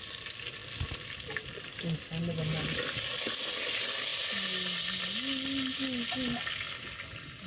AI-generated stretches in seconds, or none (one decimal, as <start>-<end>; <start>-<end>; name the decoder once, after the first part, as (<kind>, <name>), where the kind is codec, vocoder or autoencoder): none